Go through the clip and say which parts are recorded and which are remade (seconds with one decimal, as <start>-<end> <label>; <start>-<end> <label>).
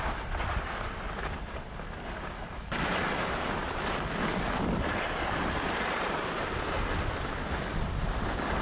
0.0-8.6 recorded